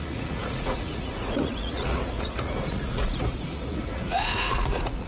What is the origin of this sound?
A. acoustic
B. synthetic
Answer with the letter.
B